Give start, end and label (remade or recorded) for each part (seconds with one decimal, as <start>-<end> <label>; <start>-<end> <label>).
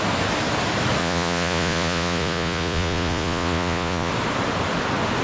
0.0-1.0 recorded; 1.0-4.1 remade; 4.1-5.2 recorded